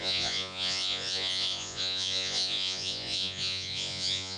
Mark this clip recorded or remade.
remade